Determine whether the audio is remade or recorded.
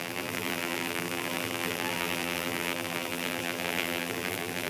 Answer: remade